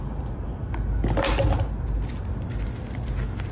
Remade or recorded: recorded